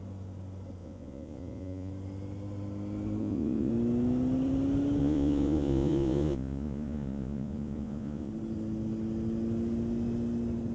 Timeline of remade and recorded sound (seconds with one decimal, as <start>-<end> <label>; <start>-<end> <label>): 0.0-0.8 recorded; 0.8-1.9 remade; 1.9-3.2 recorded; 3.2-3.7 remade; 3.7-5.0 recorded; 5.0-8.3 remade; 8.3-10.7 recorded